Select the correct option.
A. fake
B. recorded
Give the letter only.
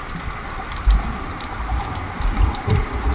B